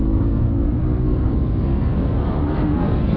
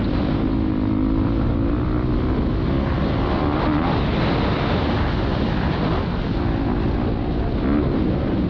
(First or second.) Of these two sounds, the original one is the second